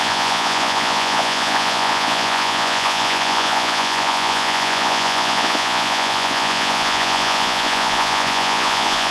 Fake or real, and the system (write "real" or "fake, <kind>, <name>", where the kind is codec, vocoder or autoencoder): fake, vocoder, Vocos